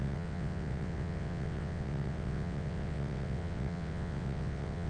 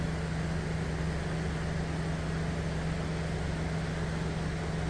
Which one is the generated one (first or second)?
first